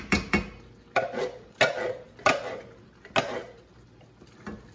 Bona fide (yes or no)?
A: yes